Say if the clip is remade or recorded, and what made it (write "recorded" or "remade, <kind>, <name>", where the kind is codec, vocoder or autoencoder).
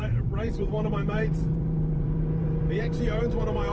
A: remade, vocoder, BigVGAN v2